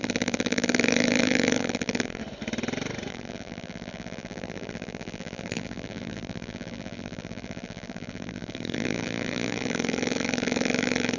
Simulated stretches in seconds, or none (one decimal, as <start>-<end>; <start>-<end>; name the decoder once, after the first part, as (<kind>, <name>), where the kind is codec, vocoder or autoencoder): 0.0-2.2 (vocoder, BigVGAN v2); 3.1-11.2